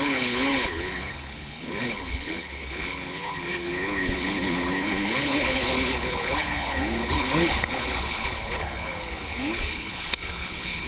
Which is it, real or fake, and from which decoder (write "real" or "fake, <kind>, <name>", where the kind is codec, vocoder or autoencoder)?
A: fake, codec, HILCodec